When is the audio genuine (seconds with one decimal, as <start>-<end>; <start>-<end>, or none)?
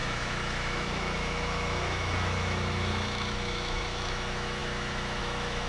none